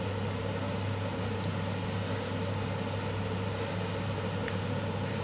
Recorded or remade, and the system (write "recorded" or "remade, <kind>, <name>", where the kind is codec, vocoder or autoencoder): recorded